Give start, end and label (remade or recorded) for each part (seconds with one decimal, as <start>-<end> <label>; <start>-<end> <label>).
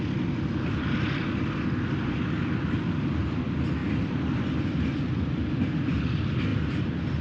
0.0-7.2 recorded